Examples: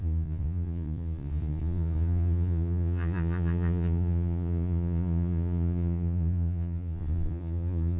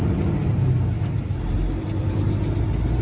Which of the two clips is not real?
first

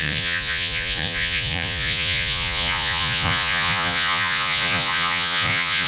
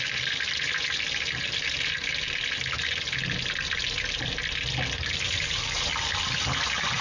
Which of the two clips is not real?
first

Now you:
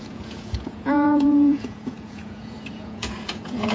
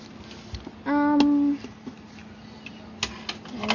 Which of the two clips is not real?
first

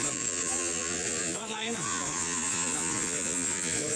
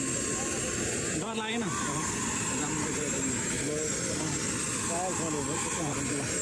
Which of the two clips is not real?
first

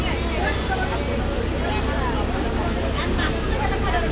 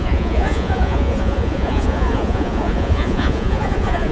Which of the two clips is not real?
second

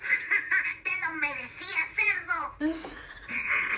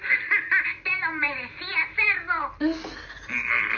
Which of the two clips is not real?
first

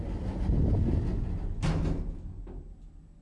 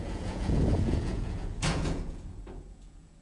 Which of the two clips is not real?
second